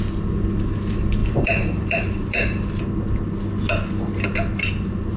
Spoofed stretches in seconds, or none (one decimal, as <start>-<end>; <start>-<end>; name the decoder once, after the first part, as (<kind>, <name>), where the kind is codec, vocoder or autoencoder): 1.2-2.9 (vocoder, BigVGAN v2); 4.5-5.2